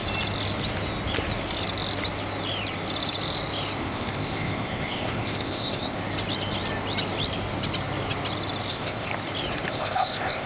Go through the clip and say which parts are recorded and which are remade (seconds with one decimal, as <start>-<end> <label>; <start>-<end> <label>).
0.0-3.8 recorded; 3.8-6.0 remade; 6.0-8.7 recorded; 8.7-9.1 remade; 9.1-9.7 recorded; 9.7-10.5 remade